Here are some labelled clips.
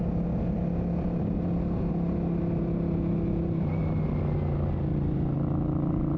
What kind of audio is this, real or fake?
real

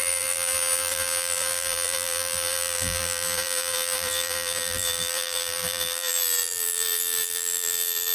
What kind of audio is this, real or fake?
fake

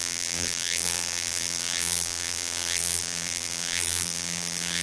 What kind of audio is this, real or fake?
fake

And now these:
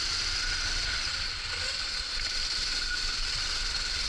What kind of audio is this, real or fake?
fake